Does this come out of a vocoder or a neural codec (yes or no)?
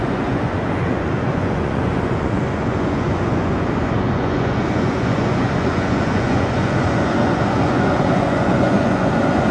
yes